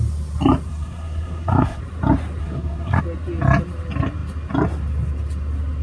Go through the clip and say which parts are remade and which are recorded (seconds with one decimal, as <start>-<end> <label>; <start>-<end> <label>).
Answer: 0.0-0.7 recorded; 0.7-1.8 remade; 1.8-2.4 recorded; 2.4-3.0 remade; 3.0-5.8 recorded